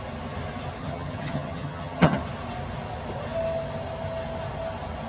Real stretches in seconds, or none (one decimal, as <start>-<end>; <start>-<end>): 0.0-0.8; 2.2-5.1

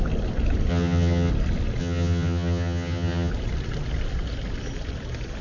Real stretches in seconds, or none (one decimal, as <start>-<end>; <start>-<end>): 0.0-0.7; 1.3-1.8; 3.3-5.4

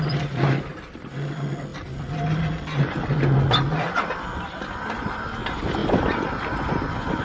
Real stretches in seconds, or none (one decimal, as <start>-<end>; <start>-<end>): 0.0-7.2

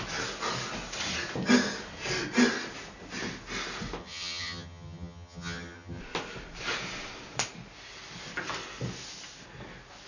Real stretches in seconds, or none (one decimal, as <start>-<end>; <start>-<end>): 0.0-4.0; 6.0-10.1